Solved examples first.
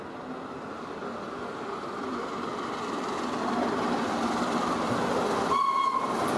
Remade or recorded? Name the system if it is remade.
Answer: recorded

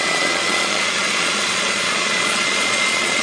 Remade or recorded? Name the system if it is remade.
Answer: remade, vocoder, Vocos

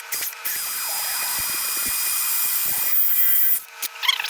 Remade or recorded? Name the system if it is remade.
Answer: recorded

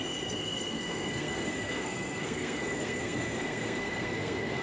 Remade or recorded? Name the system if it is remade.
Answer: remade, codec, SNAC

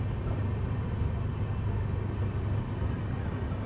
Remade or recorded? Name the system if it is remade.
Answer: recorded